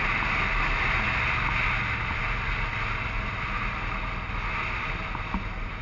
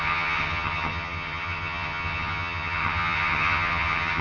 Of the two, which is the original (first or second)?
first